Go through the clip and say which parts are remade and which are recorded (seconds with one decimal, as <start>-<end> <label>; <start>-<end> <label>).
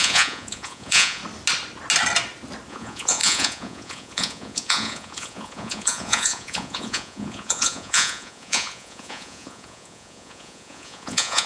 0.0-1.2 remade; 1.2-2.7 recorded; 2.7-11.5 remade